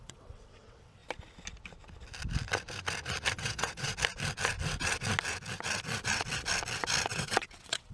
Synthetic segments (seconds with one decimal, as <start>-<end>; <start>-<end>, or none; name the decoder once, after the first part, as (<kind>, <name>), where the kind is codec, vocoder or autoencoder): 0.0-1.0 (vocoder, WaveNeXt); 3.3-3.9; 7.1-7.9